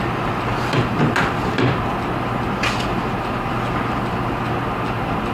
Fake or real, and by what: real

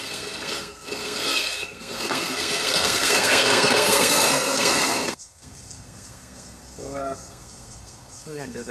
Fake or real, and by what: fake, codec, SNAC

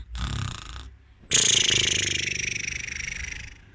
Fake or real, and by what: real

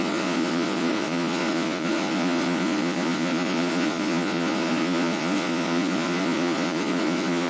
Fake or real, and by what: fake, vocoder, Vocos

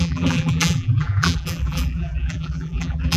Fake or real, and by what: fake, vocoder, BigVGAN v2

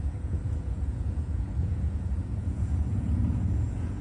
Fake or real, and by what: fake, vocoder, Vocos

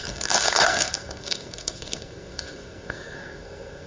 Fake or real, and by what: fake, codec, SNAC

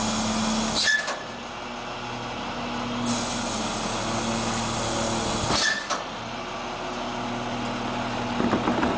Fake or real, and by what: real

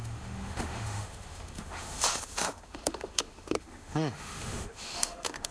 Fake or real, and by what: fake, autoencoder, DAC-VAE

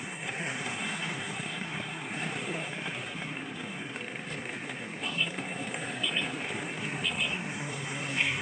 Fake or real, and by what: fake, codec, SNAC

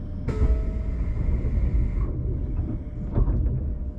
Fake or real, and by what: real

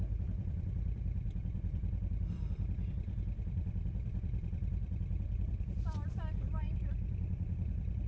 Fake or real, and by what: fake, vocoder, BigVGAN v2